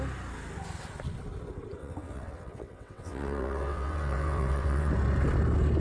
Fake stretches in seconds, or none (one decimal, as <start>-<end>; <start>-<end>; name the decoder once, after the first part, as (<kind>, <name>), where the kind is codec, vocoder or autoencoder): 1.8-4.9 (vocoder, WaveNeXt)